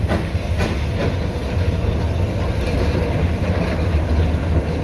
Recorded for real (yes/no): yes